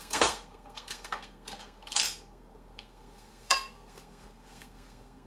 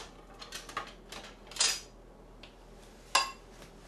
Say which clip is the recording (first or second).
second